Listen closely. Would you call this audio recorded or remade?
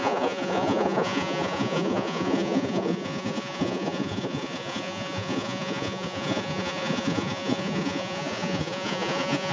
remade